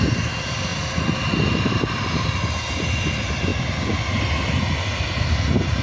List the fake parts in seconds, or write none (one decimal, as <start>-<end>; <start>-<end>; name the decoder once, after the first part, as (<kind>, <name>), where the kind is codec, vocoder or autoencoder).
none